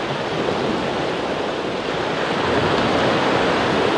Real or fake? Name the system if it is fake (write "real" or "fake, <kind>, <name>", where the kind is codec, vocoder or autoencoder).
fake, vocoder, BigVGAN v2